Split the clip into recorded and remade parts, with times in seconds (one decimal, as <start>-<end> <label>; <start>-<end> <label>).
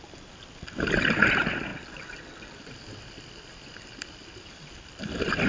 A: 0.0-5.5 recorded